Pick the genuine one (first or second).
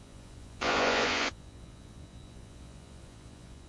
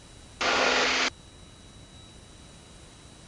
second